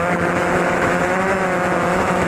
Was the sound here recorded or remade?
remade